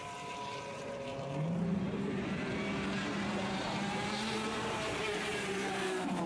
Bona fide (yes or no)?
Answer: no